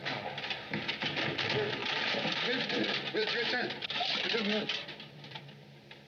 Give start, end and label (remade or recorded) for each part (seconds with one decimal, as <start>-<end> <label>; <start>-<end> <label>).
0.0-1.8 recorded; 1.8-5.5 remade; 5.5-6.1 recorded